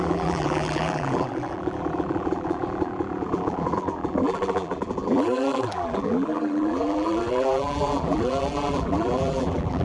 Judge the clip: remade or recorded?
remade